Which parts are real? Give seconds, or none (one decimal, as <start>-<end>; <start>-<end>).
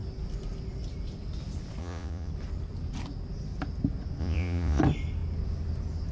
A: 0.0-1.8; 2.3-4.2; 4.8-6.1